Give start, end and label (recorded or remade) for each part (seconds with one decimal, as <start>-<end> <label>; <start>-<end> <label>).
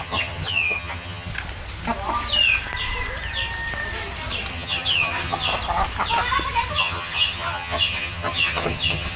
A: 0.0-1.3 remade; 1.3-4.5 recorded; 4.5-5.5 remade; 5.5-6.7 recorded; 6.7-9.2 remade